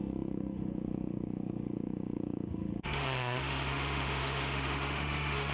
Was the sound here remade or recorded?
remade